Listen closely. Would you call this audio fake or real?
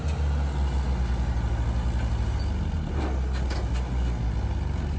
real